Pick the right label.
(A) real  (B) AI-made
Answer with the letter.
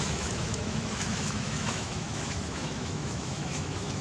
B